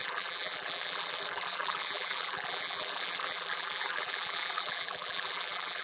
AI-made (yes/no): yes